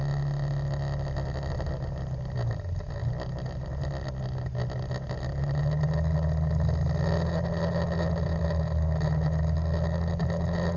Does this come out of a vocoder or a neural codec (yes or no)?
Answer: no